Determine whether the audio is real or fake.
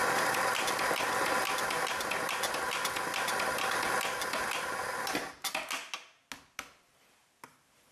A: real